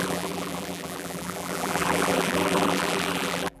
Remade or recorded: remade